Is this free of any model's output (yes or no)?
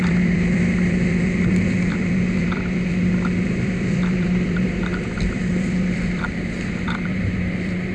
no